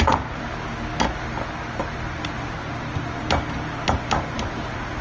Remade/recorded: recorded